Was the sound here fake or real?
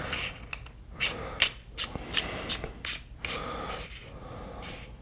real